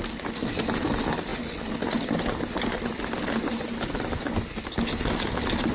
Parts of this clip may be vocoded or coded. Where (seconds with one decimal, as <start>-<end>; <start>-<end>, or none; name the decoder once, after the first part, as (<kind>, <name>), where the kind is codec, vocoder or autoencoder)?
none